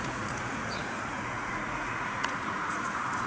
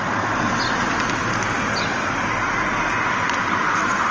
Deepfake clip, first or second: first